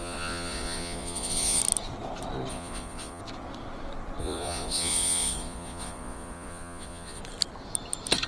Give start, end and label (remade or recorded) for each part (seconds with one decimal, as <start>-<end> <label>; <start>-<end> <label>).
0.0-1.6 remade; 1.6-2.5 recorded; 2.5-3.2 remade; 3.2-4.2 recorded; 4.2-7.2 remade; 7.2-8.3 recorded